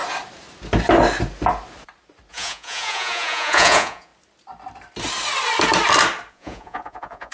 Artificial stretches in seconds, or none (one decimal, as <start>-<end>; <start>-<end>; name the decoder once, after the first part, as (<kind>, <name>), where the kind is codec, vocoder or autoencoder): 2.3-4.1 (vocoder, Vocos); 6.3-7.3